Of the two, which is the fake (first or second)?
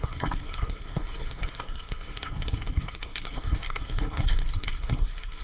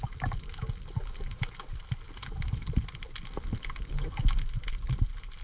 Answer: first